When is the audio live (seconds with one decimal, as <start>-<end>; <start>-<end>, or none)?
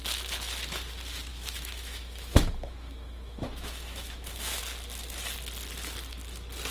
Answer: 0.0-1.3; 4.6-6.7